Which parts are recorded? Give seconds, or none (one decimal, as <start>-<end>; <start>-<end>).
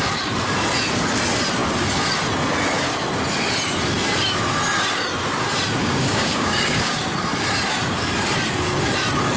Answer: 0.0-5.8; 7.0-9.4